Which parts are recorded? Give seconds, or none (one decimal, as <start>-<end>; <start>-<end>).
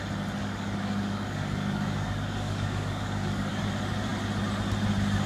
0.0-0.4; 3.6-5.3